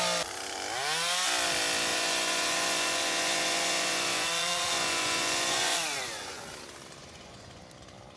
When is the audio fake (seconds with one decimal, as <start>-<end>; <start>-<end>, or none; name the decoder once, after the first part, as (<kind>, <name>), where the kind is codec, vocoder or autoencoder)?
1.9-6.4 (vocoder, Vocos); 7.0-7.6